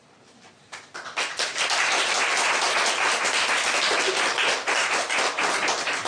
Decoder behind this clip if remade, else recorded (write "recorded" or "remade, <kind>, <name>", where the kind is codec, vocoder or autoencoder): recorded